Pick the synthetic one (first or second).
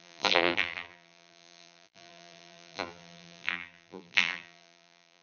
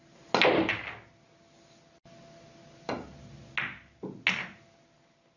first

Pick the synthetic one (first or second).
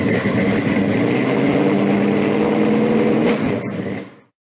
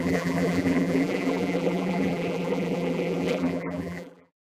second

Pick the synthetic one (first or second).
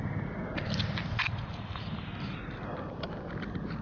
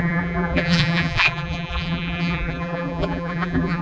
second